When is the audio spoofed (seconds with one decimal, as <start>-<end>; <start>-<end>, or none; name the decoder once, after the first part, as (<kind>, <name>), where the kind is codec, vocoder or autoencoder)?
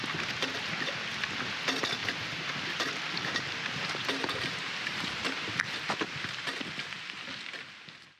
2.0-6.5 (vocoder, BigVGAN v2)